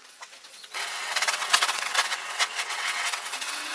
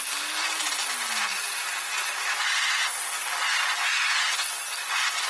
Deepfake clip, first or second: first